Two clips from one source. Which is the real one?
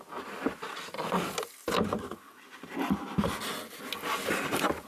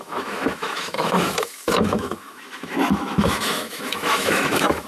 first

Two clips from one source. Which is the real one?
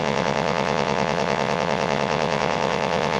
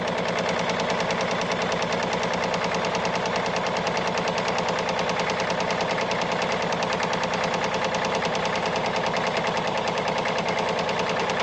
second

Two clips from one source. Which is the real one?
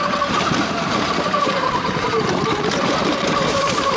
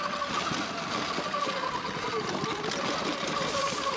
second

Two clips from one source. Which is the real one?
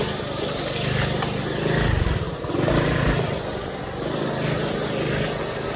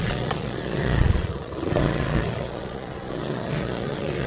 first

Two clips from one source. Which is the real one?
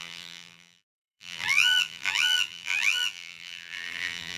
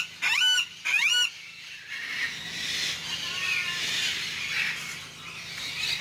second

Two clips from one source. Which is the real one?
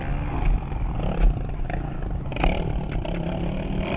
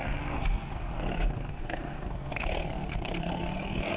first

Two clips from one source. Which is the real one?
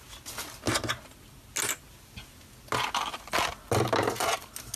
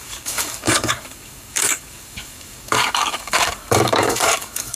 first